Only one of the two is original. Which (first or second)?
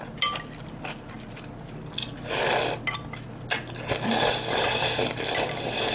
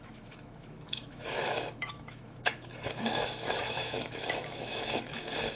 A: first